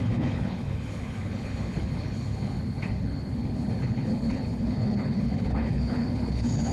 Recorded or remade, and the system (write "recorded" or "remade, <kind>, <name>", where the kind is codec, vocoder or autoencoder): remade, codec, HILCodec